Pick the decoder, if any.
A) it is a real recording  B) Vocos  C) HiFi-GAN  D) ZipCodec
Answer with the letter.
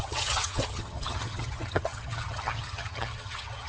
C